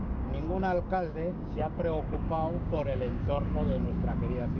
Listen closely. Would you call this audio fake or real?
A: fake